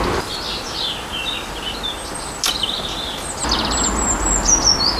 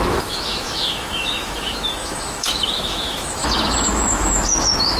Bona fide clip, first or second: first